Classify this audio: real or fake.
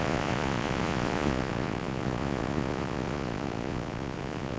fake